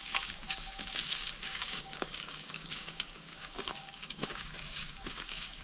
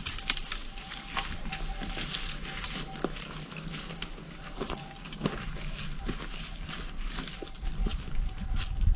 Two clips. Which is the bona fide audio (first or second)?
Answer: second